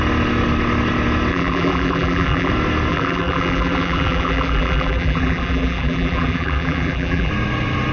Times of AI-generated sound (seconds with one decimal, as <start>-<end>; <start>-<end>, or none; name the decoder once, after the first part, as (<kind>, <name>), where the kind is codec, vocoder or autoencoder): 1.3-2.5 (vocoder, BigVGAN v2); 2.9-7.3